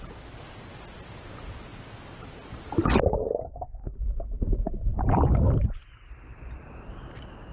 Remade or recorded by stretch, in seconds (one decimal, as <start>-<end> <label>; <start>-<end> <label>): 0.0-7.5 recorded